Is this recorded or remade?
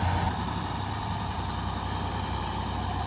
remade